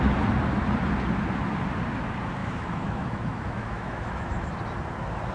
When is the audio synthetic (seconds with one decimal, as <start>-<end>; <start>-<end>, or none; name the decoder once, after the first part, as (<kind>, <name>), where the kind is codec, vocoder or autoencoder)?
2.4-4.5 (autoencoder, DAC-VAE)